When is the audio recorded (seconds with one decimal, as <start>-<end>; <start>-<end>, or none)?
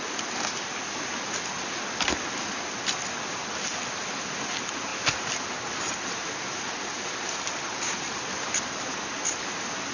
0.0-9.9